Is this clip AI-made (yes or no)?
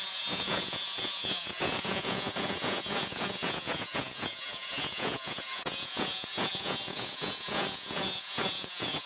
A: yes